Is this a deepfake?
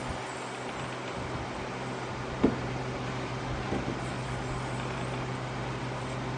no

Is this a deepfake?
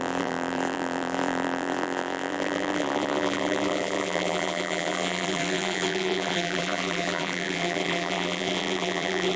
yes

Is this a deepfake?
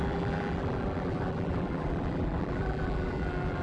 yes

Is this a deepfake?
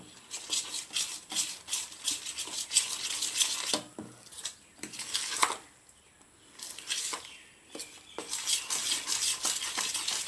yes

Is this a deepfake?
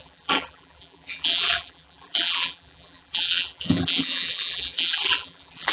yes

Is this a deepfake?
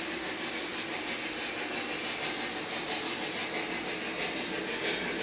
no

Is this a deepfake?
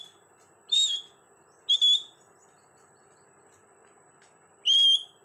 no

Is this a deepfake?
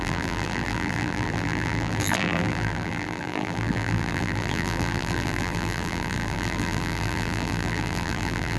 yes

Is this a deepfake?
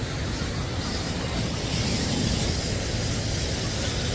no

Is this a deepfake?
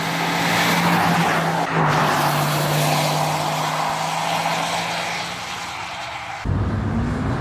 no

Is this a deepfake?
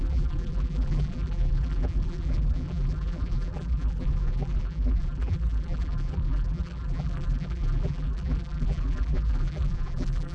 yes